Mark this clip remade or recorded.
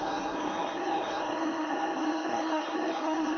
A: remade